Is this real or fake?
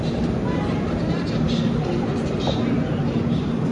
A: real